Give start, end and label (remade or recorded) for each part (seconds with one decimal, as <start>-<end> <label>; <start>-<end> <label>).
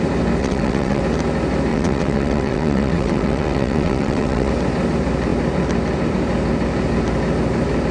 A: 0.0-0.4 recorded; 0.4-1.0 remade; 1.0-1.7 recorded; 1.7-4.5 remade; 4.5-7.9 recorded